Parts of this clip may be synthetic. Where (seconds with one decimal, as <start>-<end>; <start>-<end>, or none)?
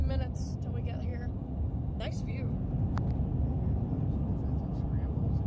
none